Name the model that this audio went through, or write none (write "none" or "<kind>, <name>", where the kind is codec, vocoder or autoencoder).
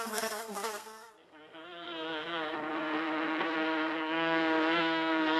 codec, SNAC